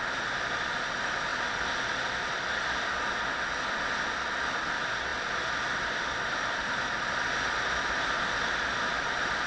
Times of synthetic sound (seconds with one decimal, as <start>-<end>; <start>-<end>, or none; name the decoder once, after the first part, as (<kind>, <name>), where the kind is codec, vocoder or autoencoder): none